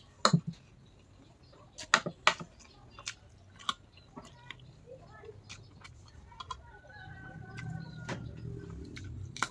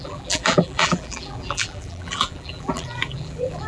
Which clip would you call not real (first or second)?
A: second